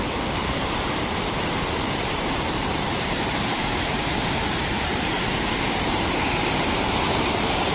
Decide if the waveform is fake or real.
fake